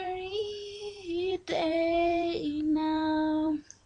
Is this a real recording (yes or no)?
no